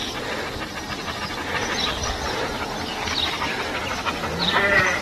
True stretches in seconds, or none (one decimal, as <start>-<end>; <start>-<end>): 0.0-5.0